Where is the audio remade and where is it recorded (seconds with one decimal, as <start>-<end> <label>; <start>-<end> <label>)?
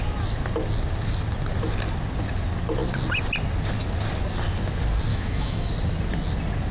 0.0-5.1 recorded; 5.1-5.7 remade; 5.7-6.7 recorded